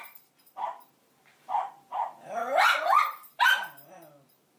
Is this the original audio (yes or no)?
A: no